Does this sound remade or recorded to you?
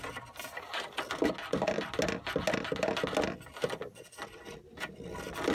recorded